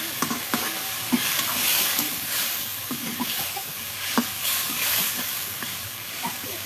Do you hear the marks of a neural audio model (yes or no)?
yes